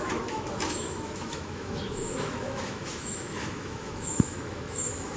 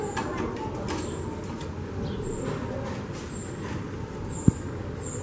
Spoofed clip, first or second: first